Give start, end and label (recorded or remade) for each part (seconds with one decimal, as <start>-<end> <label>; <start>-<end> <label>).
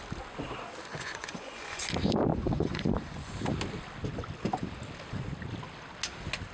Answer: 0.0-0.9 recorded; 0.9-1.8 remade; 1.8-2.3 recorded; 2.3-3.3 remade; 3.3-6.5 recorded